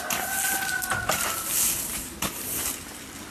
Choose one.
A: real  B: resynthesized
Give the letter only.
A